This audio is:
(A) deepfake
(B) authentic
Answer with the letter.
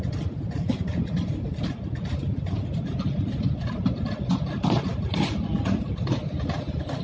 B